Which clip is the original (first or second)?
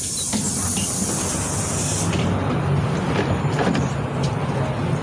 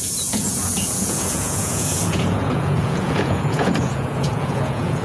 first